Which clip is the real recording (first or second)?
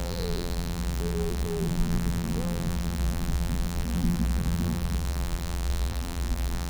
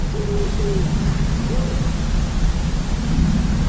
second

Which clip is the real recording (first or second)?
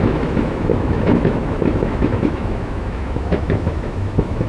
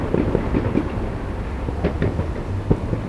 second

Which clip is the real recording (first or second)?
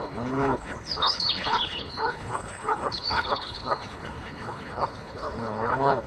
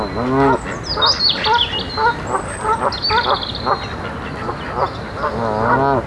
second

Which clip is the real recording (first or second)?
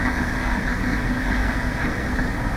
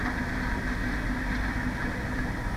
second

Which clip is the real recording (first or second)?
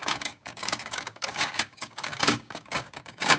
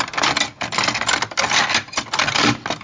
second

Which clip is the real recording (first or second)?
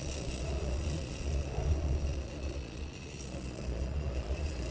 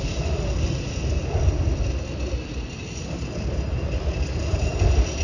second